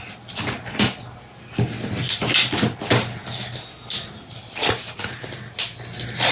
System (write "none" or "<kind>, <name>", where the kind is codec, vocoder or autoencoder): none